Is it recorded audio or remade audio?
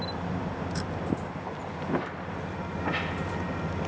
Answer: recorded